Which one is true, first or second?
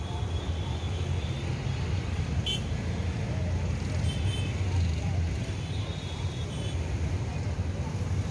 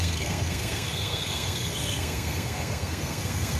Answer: first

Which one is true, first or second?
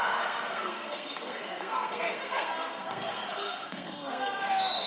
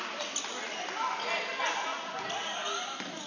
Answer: second